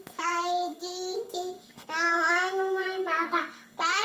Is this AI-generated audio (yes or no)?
yes